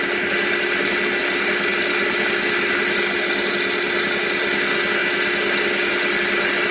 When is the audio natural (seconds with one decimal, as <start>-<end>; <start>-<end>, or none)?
0.0-6.7